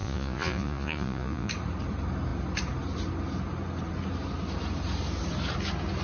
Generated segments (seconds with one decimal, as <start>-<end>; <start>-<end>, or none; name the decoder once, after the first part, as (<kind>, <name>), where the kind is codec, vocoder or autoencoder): 0.0-1.5 (vocoder, Vocos)